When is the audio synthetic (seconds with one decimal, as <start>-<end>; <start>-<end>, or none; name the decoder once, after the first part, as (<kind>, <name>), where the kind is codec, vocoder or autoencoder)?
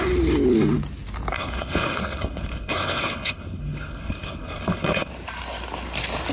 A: 1.3-5.1 (codec, HILCodec)